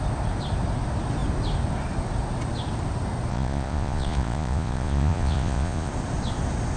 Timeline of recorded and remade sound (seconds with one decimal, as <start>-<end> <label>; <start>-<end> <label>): 0.0-3.3 recorded; 3.3-5.9 remade; 5.9-6.8 recorded